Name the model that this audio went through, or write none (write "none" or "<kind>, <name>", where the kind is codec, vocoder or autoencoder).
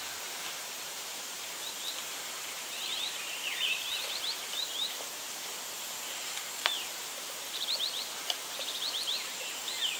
vocoder, BigVGAN v2